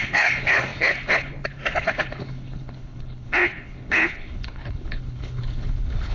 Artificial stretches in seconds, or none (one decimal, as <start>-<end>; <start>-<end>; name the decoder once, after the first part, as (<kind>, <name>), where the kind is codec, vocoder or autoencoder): 0.0-6.1 (codec, HILCodec)